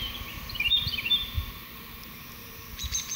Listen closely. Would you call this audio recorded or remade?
remade